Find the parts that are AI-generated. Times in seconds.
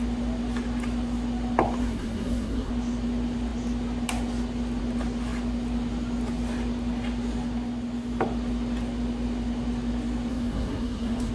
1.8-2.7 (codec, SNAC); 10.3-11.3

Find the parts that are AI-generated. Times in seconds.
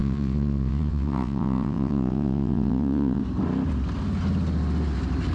0.0-3.2 (vocoder, WaveNeXt)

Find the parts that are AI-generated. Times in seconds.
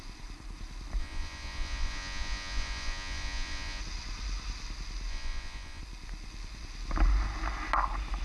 1.0-3.8 (vocoder, Vocos); 5.1-5.8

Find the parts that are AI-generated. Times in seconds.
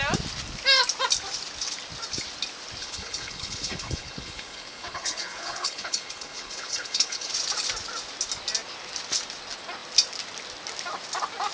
2.8-7.3 (codec, HILCodec)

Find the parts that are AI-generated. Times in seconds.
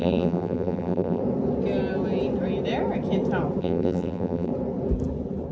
0.0-1.2 (vocoder, BigVGAN v2); 3.6-4.5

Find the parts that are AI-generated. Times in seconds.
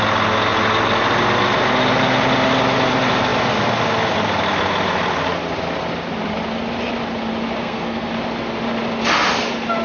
7.6-8.1 (codec, SNAC)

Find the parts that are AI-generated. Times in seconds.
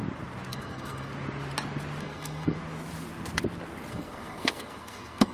0.5-1.1 (codec, SNAC); 2.0-2.6; 3.9-5.3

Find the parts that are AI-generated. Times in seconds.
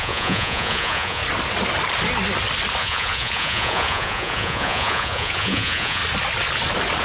0.0-1.2 (vocoder, Vocos); 2.8-6.0